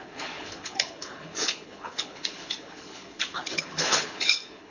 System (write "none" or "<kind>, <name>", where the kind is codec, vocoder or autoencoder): codec, HILCodec